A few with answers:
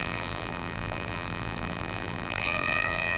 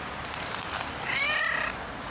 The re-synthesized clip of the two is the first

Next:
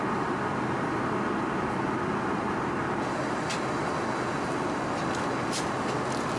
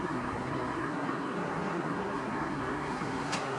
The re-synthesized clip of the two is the second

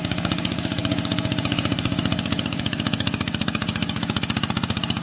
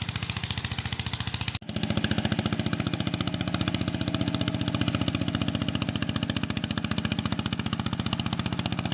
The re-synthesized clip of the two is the first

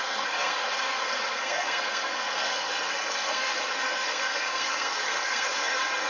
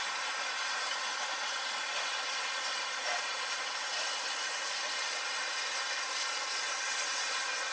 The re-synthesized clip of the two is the first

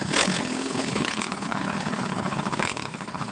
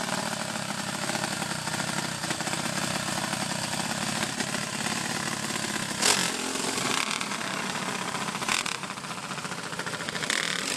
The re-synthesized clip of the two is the first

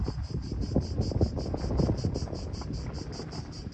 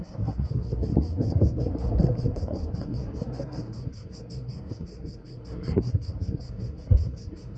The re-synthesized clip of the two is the second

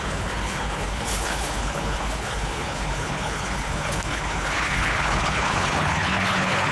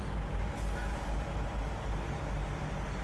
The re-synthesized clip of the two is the first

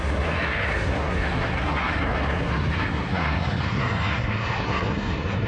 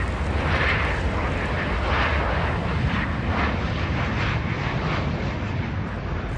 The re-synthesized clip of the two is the first